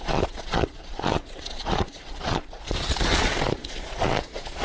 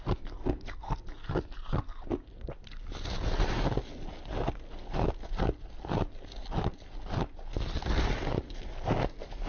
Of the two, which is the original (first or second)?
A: second